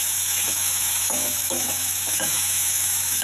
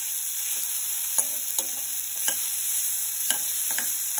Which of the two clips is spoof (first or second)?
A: first